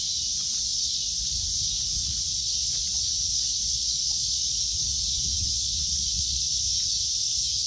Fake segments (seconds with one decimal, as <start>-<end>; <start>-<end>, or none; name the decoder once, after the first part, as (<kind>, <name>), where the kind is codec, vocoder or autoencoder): 0.7-1.4 (vocoder, Vocos); 2.0-6.6